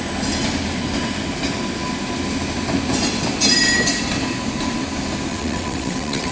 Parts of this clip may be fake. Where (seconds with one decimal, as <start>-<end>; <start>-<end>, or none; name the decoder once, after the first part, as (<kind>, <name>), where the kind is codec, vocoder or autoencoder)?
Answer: 5.3-6.3 (vocoder, WaveNeXt)

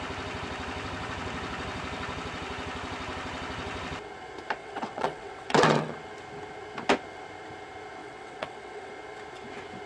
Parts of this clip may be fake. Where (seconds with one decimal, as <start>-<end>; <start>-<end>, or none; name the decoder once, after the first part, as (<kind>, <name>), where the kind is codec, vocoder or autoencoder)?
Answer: 4.6-5.9 (vocoder, WaveNeXt); 8.0-8.9